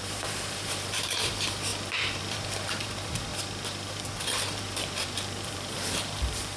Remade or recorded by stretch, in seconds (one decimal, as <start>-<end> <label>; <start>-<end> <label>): 0.0-1.7 remade; 1.7-2.2 recorded; 2.2-3.3 remade; 3.3-3.9 recorded; 3.9-6.6 remade